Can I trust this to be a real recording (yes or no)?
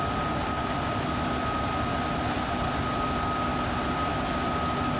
yes